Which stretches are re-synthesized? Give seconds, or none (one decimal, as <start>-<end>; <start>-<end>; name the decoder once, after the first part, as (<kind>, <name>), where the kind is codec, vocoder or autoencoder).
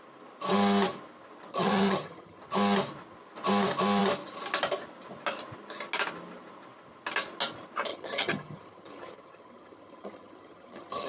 1.5-2.4 (vocoder, HiFi-GAN); 7.9-11.1